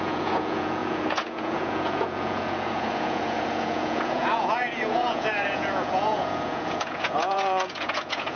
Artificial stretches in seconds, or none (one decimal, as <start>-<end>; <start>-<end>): 0.0-8.4